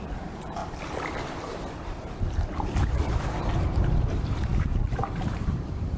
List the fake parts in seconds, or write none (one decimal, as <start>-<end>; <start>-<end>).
0.0-6.0